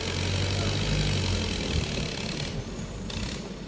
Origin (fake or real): real